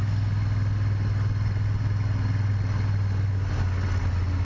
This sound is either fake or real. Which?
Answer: real